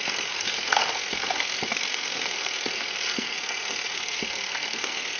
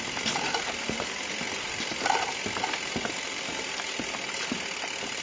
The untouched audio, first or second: second